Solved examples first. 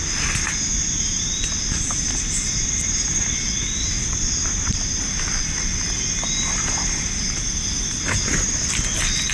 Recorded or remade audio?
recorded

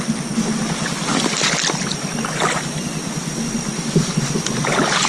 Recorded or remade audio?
recorded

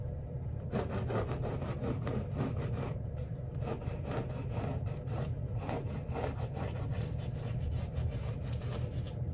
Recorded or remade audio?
remade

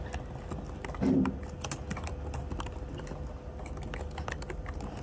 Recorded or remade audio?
recorded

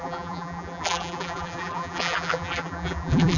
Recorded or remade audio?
remade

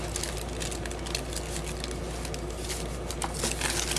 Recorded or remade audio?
recorded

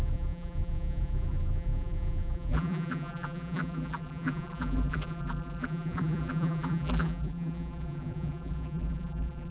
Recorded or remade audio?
remade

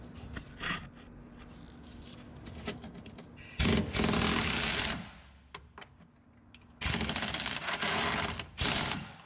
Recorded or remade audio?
recorded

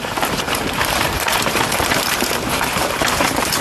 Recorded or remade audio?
remade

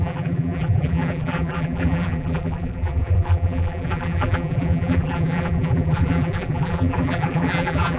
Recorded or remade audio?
remade